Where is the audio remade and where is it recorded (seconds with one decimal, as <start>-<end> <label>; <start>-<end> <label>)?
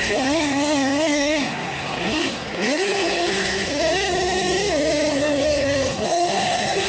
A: 0.0-3.7 remade; 3.7-5.1 recorded; 5.1-6.9 remade